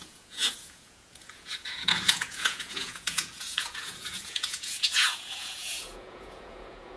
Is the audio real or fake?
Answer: fake